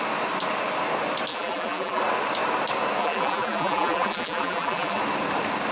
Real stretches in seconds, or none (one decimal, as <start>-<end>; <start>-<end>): 0.0-1.3; 2.0-3.0; 5.0-5.7